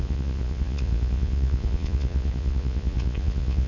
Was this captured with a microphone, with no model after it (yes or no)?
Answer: no